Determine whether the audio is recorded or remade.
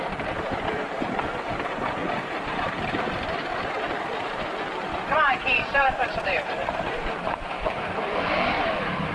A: remade